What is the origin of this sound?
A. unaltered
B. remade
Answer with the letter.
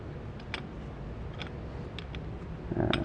A